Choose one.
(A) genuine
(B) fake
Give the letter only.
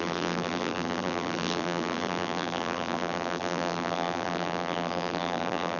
B